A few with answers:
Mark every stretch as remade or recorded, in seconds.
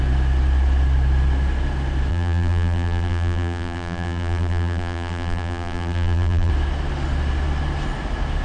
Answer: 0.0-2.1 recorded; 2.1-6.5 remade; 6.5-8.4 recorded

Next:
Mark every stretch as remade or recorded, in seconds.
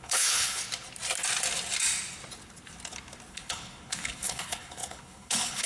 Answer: 0.0-0.6 remade; 0.6-3.3 recorded; 3.3-5.7 remade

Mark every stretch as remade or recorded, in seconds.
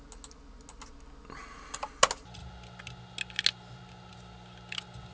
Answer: 0.0-5.1 recorded